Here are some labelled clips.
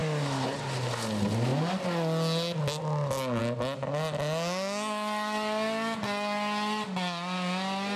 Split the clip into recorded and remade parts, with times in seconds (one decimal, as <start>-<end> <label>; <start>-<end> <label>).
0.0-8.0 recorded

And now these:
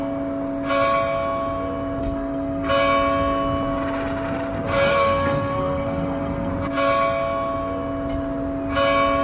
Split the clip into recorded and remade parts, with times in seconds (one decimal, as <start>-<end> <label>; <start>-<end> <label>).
0.0-2.0 recorded; 2.0-2.7 remade; 2.7-4.9 recorded; 4.9-6.5 remade; 6.5-9.2 recorded

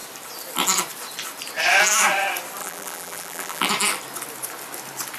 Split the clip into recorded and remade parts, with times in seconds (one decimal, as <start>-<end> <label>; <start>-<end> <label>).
0.0-2.6 recorded; 2.6-3.7 remade; 3.7-5.2 recorded

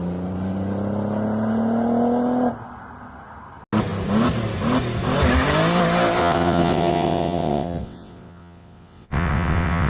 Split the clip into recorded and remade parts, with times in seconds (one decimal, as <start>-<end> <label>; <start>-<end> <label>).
0.0-6.2 recorded; 6.2-9.9 remade

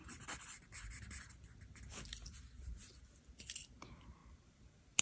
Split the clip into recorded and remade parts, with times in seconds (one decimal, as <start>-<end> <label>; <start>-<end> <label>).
0.0-0.9 remade; 0.9-4.2 recorded; 4.2-5.0 remade